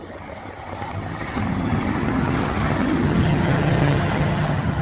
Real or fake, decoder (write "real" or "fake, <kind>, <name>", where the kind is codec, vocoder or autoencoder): fake, vocoder, HiFi-GAN